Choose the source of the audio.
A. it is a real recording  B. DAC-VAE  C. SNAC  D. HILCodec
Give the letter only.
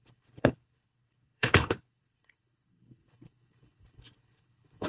D